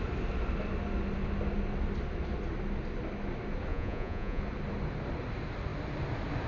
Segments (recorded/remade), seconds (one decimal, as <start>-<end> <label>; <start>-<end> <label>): 0.0-3.7 recorded; 3.7-4.4 remade; 4.4-6.5 recorded

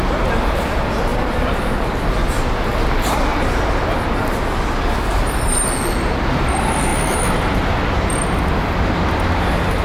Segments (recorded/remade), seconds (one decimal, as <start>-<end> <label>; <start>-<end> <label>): 0.0-3.3 remade; 3.3-5.1 recorded; 5.1-6.9 remade; 6.9-9.3 recorded; 9.3-9.8 remade

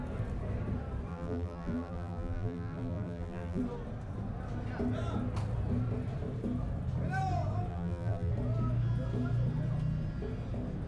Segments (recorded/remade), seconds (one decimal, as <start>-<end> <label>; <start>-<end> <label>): 0.0-1.1 recorded; 1.1-3.6 remade; 3.6-7.7 recorded; 7.7-8.3 remade; 8.3-10.9 recorded

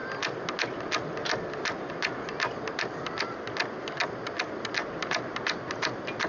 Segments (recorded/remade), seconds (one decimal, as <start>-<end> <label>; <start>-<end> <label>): 0.0-6.3 recorded

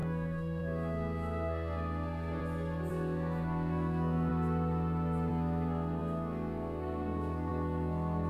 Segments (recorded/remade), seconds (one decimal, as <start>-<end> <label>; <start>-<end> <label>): 0.0-2.4 remade; 2.4-2.9 recorded; 2.9-4.3 remade; 4.3-5.3 recorded; 5.3-8.3 remade

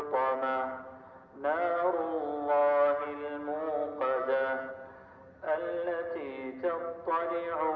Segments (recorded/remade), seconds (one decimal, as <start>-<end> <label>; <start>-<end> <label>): 0.0-7.8 recorded

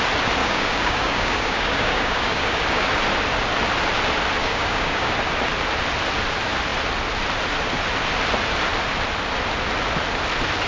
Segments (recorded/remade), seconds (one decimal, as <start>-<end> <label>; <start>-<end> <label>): 0.0-0.4 recorded; 0.4-2.9 remade; 2.9-4.4 recorded; 4.4-5.1 remade; 5.1-10.7 recorded

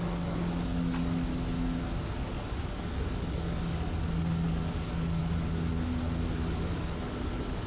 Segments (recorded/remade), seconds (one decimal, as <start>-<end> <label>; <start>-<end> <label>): 0.0-1.3 remade; 1.3-2.2 recorded; 2.2-5.2 remade; 5.2-6.0 recorded; 6.0-7.7 remade